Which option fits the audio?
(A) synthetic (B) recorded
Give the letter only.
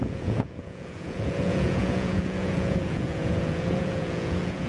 A